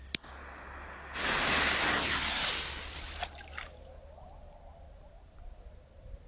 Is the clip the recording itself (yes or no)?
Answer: yes